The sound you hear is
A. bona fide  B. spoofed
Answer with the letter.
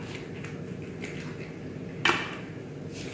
A